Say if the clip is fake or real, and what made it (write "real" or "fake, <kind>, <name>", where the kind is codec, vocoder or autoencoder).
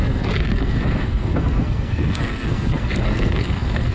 fake, codec, SNAC